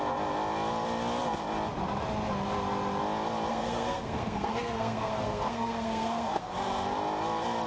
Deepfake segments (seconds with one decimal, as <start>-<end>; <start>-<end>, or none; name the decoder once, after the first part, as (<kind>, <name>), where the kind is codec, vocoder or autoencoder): 3.5-6.5 (codec, SNAC)